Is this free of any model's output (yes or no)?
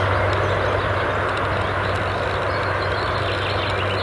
yes